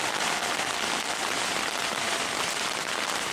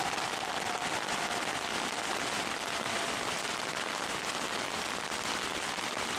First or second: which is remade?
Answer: first